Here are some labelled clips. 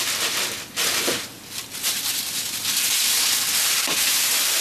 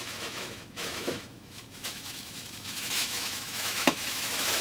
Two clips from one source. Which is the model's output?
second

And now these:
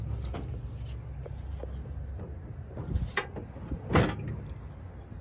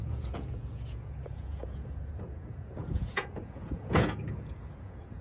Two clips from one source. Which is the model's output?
second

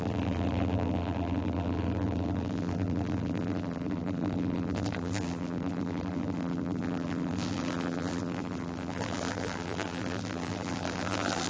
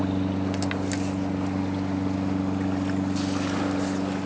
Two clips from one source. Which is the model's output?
first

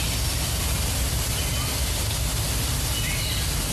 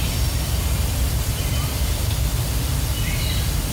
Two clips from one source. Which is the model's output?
second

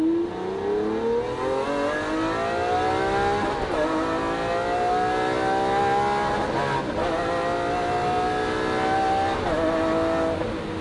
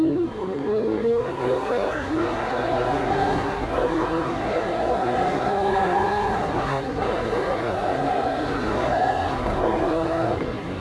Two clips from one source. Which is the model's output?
second